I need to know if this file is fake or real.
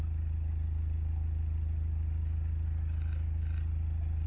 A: real